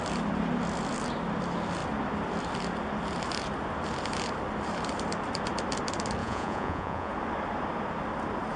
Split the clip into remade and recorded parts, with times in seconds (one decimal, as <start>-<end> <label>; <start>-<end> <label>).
0.0-6.2 recorded; 6.2-7.1 remade; 7.1-8.6 recorded